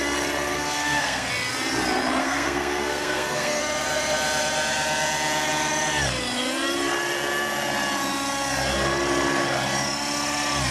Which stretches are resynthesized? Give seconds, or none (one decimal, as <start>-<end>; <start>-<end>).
0.5-1.3; 2.2-3.6